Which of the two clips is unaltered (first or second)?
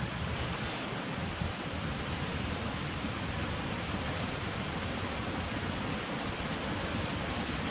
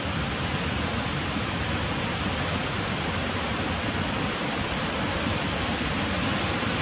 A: second